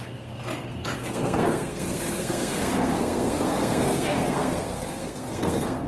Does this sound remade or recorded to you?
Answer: remade